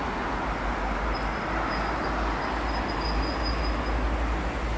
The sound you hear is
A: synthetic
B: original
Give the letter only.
B